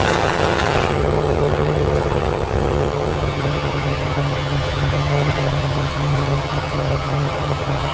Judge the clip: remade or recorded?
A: remade